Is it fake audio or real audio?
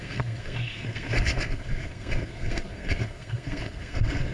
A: fake